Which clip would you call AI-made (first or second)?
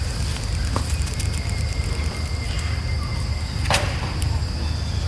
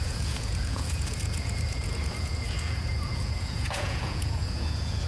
second